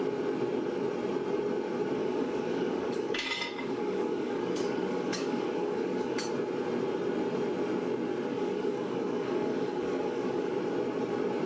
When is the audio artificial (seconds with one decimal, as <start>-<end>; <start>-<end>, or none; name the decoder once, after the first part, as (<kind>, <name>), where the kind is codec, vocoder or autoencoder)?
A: 2.0-6.2 (codec, DAC); 8.3-10.5